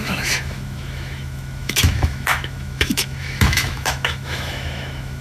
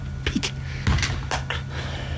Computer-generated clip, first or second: first